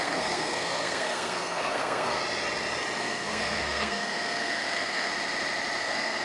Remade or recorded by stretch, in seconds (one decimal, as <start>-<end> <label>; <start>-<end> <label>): 0.0-2.2 remade; 2.2-3.0 recorded; 3.0-5.1 remade; 5.1-5.8 recorded; 5.8-6.2 remade